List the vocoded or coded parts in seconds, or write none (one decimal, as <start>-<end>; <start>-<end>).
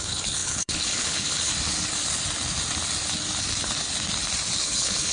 0.0-1.5; 4.6-5.1